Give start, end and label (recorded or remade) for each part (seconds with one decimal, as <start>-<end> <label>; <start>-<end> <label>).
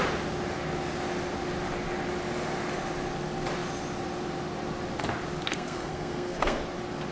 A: 0.0-5.5 recorded; 5.5-6.6 remade; 6.6-7.1 recorded